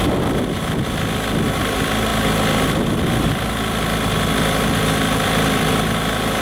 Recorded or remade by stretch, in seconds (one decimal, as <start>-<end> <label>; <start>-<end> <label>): 0.0-6.4 recorded